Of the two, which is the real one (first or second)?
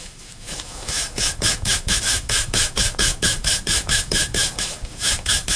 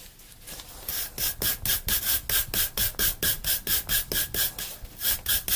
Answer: second